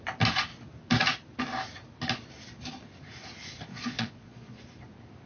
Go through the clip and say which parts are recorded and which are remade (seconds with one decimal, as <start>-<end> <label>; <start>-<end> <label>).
0.0-3.7 recorded; 3.7-4.6 remade; 4.6-5.3 recorded